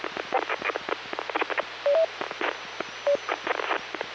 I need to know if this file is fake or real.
real